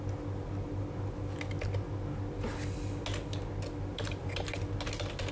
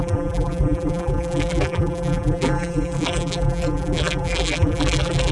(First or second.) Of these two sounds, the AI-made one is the second